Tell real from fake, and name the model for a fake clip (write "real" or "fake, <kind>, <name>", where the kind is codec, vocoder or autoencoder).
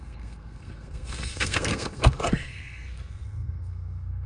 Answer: fake, codec, SNAC